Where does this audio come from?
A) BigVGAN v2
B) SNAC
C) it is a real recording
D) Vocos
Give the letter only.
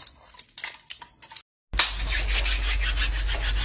C